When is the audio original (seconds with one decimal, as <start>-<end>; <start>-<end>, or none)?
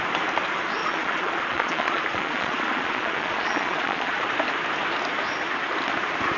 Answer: 0.0-0.8; 4.3-6.4